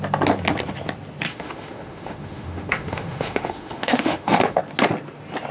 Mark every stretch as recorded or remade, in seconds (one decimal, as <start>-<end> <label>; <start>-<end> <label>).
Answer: 0.0-1.3 recorded; 1.3-4.6 remade; 4.6-5.5 recorded